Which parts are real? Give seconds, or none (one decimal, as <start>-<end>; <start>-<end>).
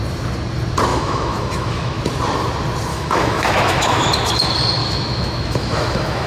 0.0-0.9; 2.0-2.9; 4.1-4.8